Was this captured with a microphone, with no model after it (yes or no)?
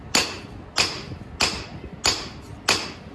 yes